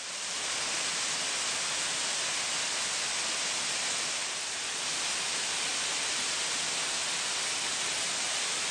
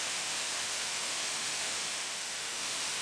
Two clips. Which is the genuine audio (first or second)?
first